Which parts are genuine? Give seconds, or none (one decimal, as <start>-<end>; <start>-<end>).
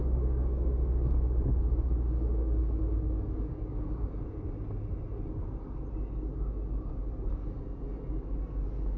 4.0-9.0